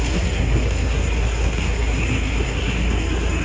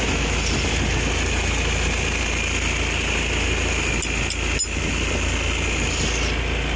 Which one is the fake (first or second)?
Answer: first